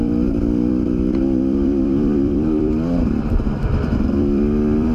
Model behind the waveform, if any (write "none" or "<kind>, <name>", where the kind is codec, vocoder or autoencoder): vocoder, BigVGAN v2